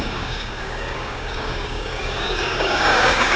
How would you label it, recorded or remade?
remade